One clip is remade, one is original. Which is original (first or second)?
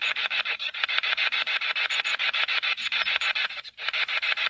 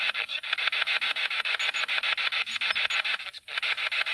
second